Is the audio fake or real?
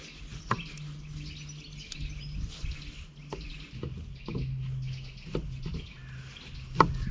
real